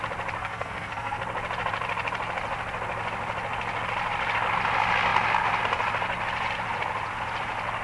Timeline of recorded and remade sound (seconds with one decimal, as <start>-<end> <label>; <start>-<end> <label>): 0.0-0.4 recorded; 0.4-1.2 remade; 1.2-7.8 recorded